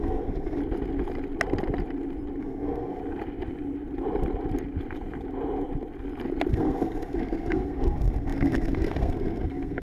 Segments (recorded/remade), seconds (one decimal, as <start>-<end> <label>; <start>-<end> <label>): 0.0-0.6 remade; 0.6-2.4 recorded; 2.4-3.0 remade; 3.0-6.5 recorded; 6.5-9.8 remade